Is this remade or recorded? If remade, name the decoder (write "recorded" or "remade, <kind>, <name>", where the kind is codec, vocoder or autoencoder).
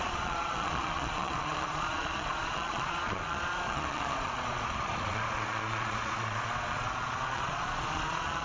remade, vocoder, Vocos